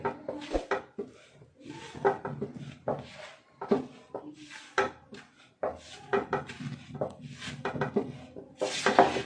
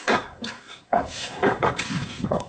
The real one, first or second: first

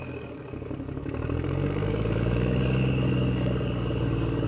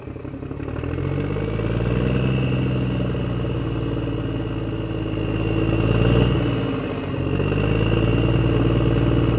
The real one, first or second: second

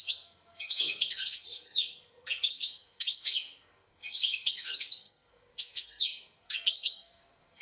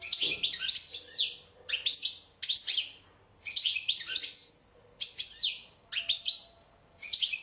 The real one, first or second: second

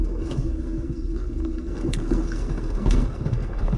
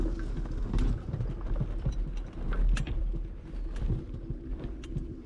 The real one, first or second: second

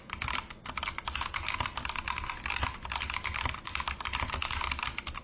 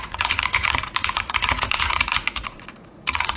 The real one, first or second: first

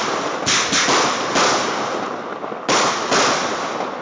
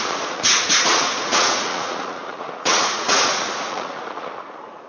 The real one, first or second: first